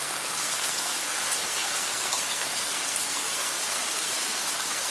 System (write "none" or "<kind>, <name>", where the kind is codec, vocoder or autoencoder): codec, SNAC